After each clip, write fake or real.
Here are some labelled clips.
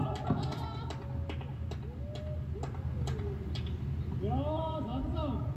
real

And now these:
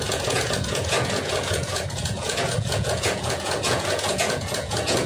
fake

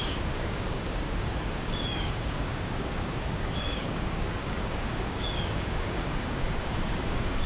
fake